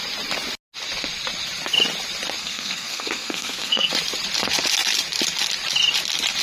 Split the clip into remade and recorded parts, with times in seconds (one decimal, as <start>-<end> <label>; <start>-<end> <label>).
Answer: 0.0-2.4 recorded; 2.4-3.9 remade; 3.9-6.4 recorded